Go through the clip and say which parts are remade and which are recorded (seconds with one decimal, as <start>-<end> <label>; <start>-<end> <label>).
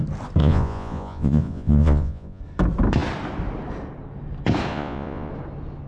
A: 0.0-0.4 recorded; 0.4-2.4 remade; 2.4-4.7 recorded; 4.7-5.3 remade; 5.3-5.9 recorded